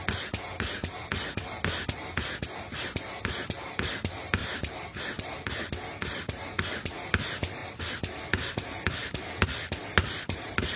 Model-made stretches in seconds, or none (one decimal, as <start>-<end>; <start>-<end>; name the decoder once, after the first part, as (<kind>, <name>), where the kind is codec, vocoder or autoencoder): 7.6-8.5 (vocoder, BigVGAN v2)